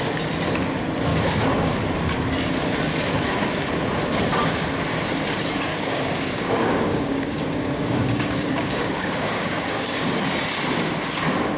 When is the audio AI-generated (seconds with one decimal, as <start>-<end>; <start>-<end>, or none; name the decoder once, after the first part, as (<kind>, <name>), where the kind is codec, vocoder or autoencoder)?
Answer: 1.1-1.8 (codec, DAC); 5.7-10.1